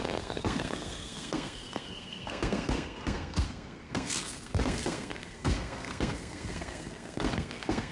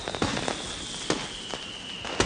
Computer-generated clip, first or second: first